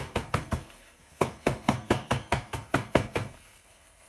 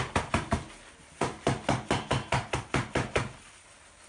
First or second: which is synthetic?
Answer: first